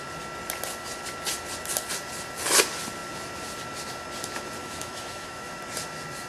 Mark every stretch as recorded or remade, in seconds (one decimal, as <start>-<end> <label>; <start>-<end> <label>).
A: 0.0-4.6 recorded; 4.6-5.6 remade; 5.6-6.3 recorded